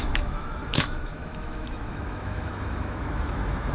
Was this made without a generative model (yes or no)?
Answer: no